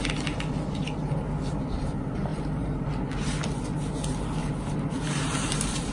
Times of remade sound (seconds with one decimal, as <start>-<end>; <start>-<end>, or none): 2.3-2.9; 4.4-5.9